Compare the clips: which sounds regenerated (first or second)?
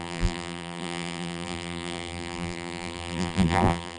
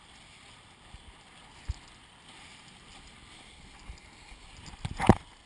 first